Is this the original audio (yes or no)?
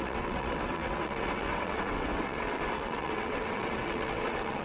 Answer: no